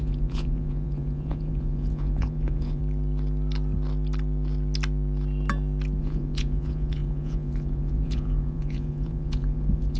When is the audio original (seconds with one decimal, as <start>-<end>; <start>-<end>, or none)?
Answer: 2.8-6.0